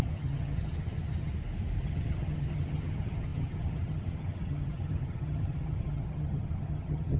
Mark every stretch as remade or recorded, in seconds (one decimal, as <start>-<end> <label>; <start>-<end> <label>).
0.0-1.3 remade; 1.3-1.8 recorded; 1.8-7.2 remade